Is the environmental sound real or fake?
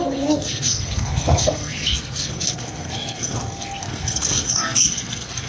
fake